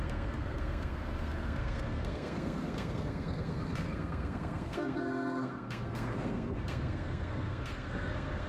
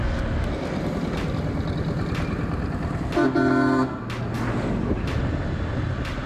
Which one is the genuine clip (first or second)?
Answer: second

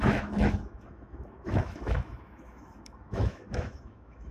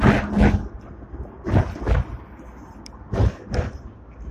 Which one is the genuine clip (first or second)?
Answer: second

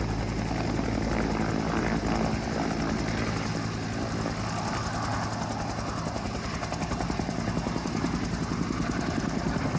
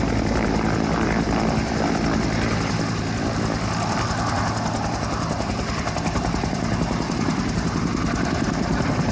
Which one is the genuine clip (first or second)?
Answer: first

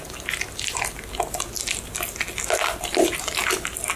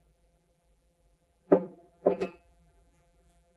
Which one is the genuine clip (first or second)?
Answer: first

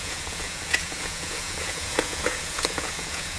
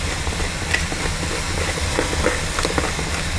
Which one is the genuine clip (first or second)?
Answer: second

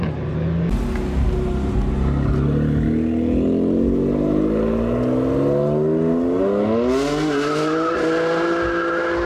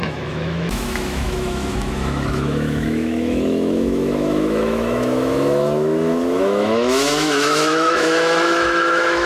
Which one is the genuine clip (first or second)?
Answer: first